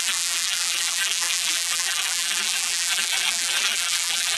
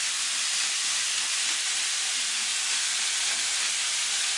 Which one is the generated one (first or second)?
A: first